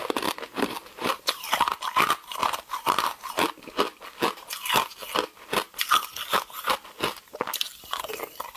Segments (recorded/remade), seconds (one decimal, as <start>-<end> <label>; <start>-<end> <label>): 0.0-1.7 remade; 1.7-2.4 recorded; 2.4-3.5 remade; 3.5-8.6 recorded